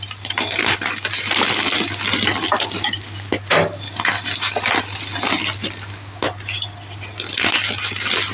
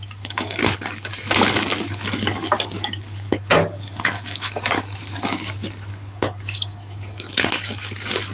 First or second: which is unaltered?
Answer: first